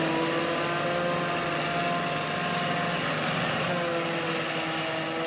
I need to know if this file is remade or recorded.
recorded